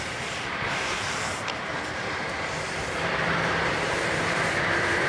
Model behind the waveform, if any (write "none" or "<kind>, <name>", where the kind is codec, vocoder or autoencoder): vocoder, BigVGAN v2